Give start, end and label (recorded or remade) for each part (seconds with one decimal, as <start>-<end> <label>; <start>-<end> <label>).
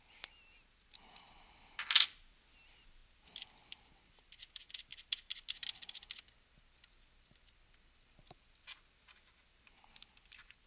0.0-10.7 recorded